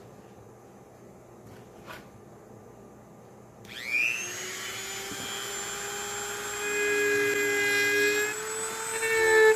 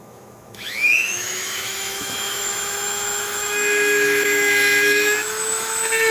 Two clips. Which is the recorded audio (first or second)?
first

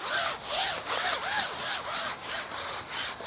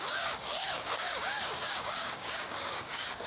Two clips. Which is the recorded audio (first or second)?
first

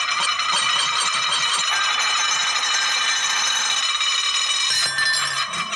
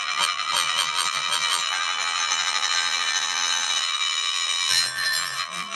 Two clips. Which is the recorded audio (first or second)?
first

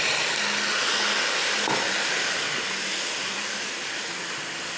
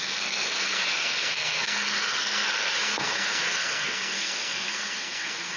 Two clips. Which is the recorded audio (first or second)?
first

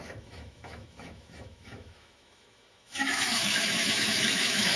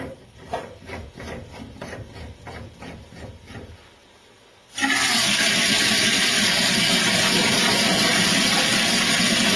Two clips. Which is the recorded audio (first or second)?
second